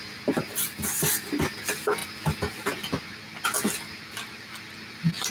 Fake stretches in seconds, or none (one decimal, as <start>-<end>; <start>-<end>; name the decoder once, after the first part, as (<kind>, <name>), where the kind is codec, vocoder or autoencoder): none